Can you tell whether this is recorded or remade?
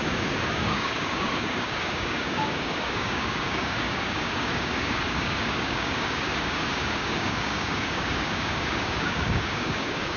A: remade